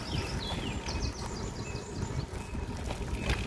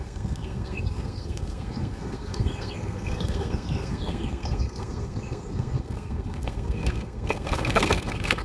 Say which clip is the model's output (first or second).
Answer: second